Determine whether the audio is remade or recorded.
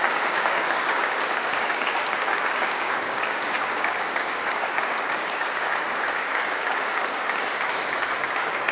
remade